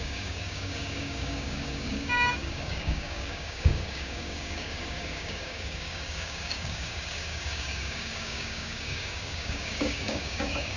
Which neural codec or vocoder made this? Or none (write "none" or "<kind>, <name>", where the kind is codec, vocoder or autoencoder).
codec, DAC